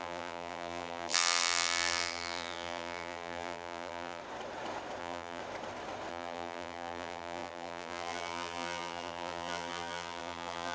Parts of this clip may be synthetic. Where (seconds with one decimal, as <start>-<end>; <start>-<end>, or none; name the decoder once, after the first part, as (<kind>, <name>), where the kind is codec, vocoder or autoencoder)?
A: 0.0-4.2 (vocoder, BigVGAN v2); 5.0-5.4; 6.1-10.7